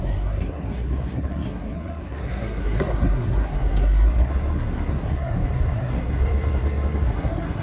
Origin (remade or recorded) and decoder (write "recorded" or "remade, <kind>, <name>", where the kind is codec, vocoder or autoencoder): remade, codec, SNAC